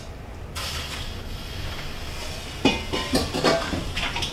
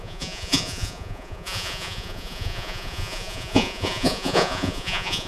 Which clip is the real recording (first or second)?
first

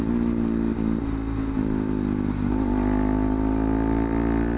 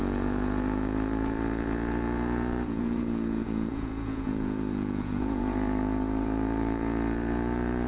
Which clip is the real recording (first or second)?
first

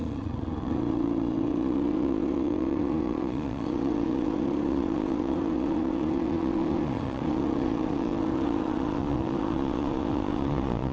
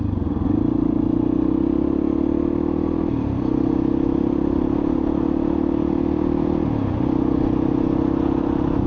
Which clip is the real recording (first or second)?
second